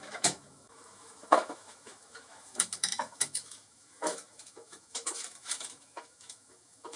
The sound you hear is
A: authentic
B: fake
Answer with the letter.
B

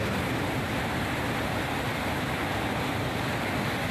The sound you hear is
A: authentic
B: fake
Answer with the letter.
A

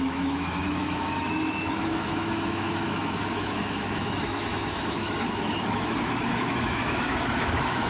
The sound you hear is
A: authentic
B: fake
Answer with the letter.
B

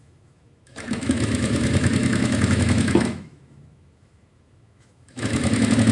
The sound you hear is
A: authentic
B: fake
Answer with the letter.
B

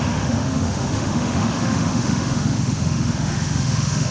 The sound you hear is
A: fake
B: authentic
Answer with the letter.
A